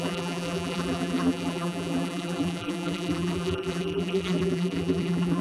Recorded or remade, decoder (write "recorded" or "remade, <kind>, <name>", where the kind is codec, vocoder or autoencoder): remade, vocoder, BigVGAN v2